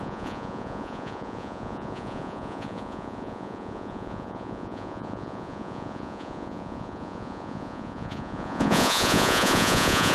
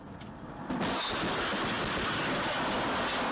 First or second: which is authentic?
second